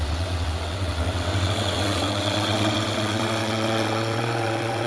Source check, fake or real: fake